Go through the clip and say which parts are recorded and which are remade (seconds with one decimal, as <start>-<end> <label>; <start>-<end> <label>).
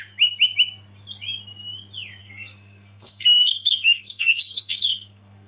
0.0-2.2 recorded; 2.2-5.5 remade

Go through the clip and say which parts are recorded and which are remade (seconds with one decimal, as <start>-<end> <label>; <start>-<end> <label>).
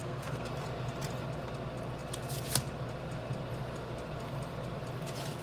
0.0-0.5 remade; 0.5-5.4 recorded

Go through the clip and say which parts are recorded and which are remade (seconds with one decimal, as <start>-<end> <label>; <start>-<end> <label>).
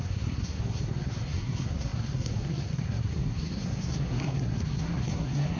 0.0-5.6 remade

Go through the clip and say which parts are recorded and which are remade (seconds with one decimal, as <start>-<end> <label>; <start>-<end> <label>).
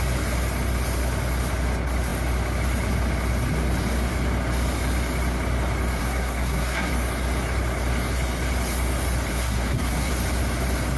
0.0-6.0 recorded; 6.0-6.9 remade; 6.9-9.3 recorded; 9.3-10.1 remade; 10.1-11.0 recorded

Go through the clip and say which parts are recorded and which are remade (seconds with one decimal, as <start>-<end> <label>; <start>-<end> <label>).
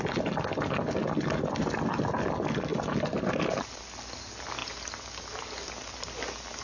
0.0-6.6 recorded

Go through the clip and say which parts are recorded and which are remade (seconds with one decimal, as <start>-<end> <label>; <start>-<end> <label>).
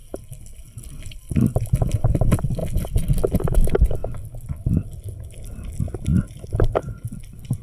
0.0-7.6 recorded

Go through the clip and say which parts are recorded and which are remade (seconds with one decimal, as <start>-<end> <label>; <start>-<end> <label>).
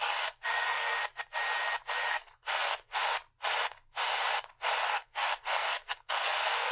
0.0-1.0 remade; 1.0-2.1 recorded; 2.1-3.0 remade; 3.0-4.8 recorded; 4.8-6.7 remade